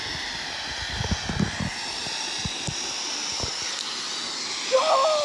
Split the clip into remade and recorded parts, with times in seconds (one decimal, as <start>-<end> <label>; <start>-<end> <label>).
0.0-5.2 recorded